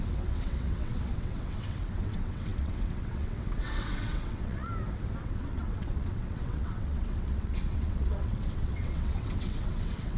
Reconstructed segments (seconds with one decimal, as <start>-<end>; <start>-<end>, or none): 0.0-4.7; 5.2-10.2